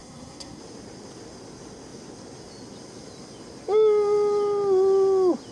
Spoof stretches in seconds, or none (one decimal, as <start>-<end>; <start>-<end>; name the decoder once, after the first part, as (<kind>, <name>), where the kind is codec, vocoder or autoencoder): 0.0-0.6 (codec, SNAC)